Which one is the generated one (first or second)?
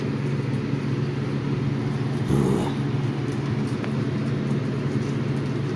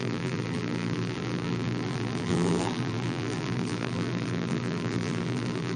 second